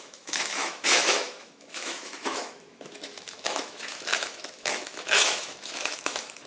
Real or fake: fake